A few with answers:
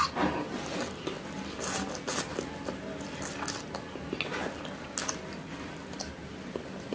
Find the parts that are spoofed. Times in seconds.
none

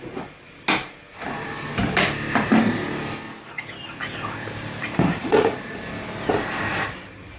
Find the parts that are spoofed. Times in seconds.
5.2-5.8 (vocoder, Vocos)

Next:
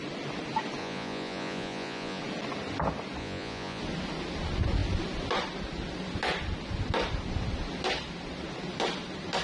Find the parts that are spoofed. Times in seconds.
0.8-2.2 (vocoder, Vocos); 3.2-3.8

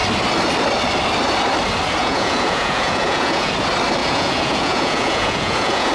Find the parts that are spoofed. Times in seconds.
2.0-3.5 (vocoder, Vocos); 4.0-5.9

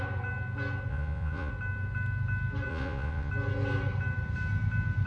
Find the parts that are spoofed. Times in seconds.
0.9-1.5 (vocoder, Vocos); 2.7-3.3

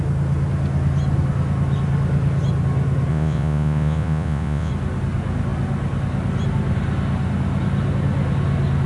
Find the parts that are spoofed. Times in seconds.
3.1-4.7 (vocoder, Vocos)

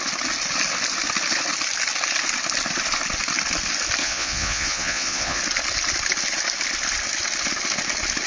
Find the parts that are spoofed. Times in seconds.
4.0-5.4 (vocoder, Vocos)